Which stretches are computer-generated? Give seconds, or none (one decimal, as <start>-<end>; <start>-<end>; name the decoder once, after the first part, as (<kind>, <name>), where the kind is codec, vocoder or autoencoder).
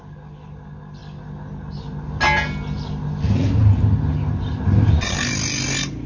none